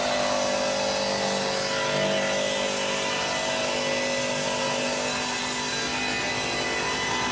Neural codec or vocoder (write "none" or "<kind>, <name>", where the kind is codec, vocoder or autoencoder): none